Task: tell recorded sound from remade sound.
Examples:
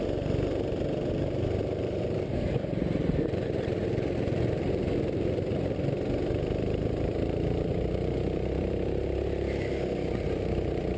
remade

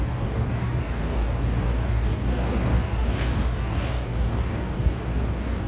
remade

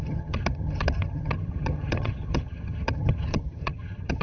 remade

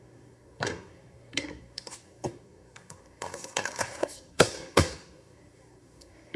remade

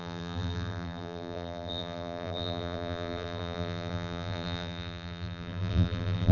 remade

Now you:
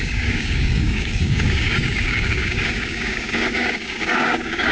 remade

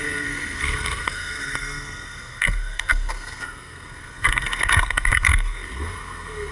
remade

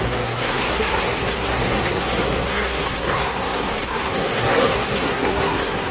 remade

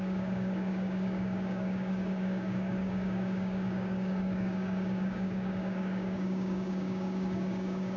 remade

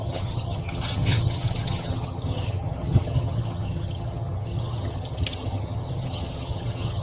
remade